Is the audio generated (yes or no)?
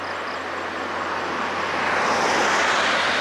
no